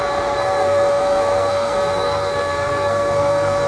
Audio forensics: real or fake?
fake